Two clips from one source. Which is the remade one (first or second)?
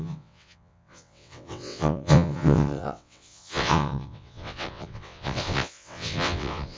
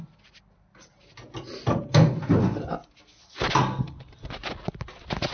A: first